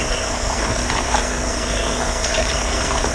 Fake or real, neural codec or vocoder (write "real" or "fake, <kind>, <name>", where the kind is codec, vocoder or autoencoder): fake, codec, SNAC